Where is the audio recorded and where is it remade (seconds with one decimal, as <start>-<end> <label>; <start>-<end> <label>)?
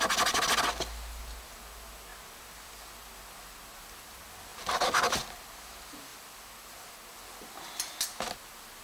0.0-2.1 recorded; 2.1-2.7 remade; 2.7-4.5 recorded; 4.5-5.0 remade; 5.0-8.8 recorded